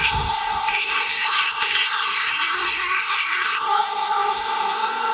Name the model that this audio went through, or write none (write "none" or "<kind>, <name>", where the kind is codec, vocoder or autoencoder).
codec, SNAC